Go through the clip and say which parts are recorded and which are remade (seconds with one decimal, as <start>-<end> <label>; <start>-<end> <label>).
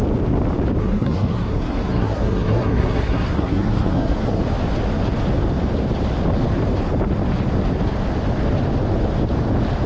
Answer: 0.0-0.8 recorded; 0.8-4.4 remade; 4.4-9.9 recorded